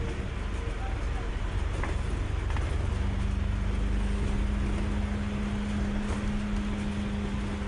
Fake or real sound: real